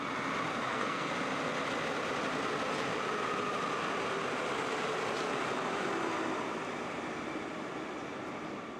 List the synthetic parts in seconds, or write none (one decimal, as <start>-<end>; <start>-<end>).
0.5-1.1